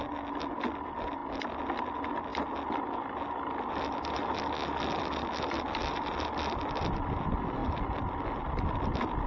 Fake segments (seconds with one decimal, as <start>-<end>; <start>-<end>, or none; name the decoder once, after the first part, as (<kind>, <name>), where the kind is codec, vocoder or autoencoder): none